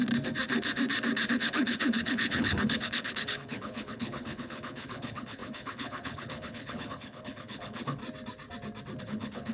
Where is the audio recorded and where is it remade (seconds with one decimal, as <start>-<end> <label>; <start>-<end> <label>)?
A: 0.0-1.3 recorded; 1.3-8.0 remade; 8.0-9.0 recorded; 9.0-9.5 remade